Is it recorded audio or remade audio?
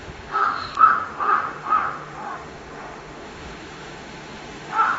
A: remade